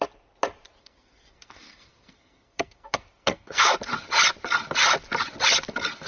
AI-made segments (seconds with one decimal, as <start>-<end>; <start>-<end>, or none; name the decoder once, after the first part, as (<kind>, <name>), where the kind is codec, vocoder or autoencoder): 0.8-3.7 (codec, SNAC)